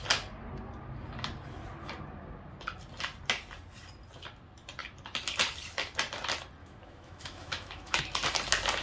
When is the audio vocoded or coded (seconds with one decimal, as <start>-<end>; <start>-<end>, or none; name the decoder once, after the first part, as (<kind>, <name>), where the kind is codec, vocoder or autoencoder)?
6.6-8.0 (autoencoder, DAC-VAE)